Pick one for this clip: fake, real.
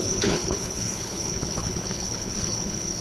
fake